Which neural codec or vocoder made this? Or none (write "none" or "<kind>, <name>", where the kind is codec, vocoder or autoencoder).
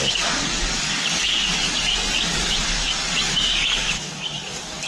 codec, DAC